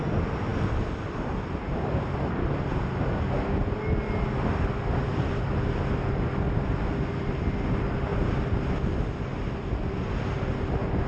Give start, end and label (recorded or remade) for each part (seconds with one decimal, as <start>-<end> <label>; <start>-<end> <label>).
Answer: 0.0-0.5 recorded; 0.5-2.7 remade; 2.7-5.1 recorded; 5.1-5.7 remade; 5.7-11.1 recorded